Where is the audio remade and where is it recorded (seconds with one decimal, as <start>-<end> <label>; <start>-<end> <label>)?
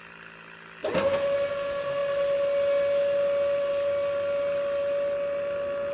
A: 0.0-5.9 recorded